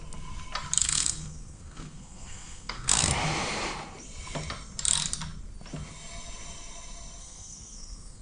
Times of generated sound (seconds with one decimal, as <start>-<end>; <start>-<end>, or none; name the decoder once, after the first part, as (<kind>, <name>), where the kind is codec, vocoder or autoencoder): 0.8-3.1 (codec, SNAC); 7.2-8.2